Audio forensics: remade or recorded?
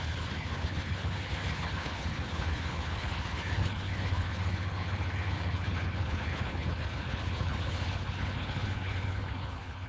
remade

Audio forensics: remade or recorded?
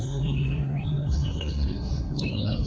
remade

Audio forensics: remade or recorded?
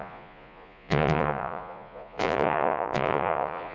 remade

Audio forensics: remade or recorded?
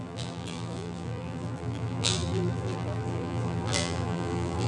remade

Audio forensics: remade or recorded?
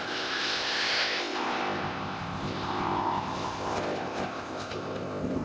remade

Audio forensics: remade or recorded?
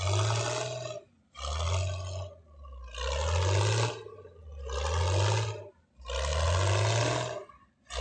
recorded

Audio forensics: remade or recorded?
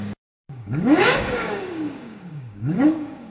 remade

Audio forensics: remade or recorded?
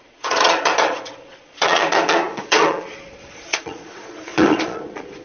remade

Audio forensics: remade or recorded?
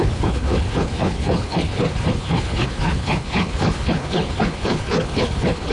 remade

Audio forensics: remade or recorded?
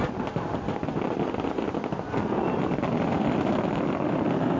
recorded